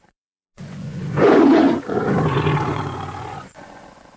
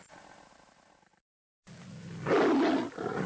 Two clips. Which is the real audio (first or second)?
second